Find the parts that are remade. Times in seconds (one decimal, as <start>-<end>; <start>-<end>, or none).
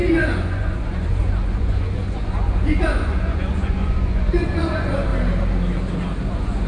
0.0-5.1; 6.3-6.7